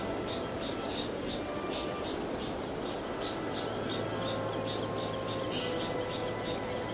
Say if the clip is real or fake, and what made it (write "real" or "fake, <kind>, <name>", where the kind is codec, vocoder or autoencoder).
real